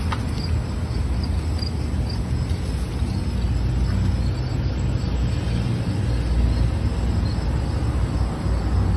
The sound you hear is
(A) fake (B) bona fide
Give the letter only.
B